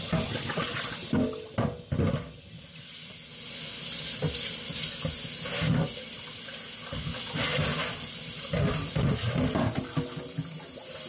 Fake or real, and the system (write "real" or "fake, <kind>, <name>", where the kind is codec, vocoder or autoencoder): real